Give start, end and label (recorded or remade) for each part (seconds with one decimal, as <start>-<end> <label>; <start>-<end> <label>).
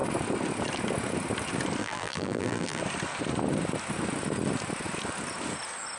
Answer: 0.0-1.8 recorded; 1.8-2.8 remade; 2.8-6.0 recorded